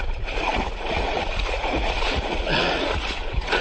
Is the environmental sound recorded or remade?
remade